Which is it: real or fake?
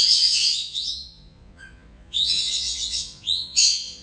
fake